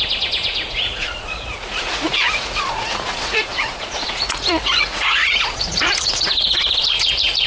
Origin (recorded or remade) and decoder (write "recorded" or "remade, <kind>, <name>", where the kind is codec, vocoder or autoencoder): remade, vocoder, Vocos